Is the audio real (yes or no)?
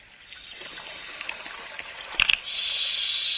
yes